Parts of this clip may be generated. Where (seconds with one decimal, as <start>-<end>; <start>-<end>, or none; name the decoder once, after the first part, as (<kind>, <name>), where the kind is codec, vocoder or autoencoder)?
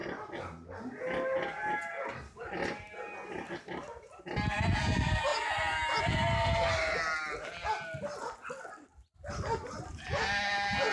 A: 0.0-5.3 (vocoder, BigVGAN v2); 6.0-8.9; 9.9-10.9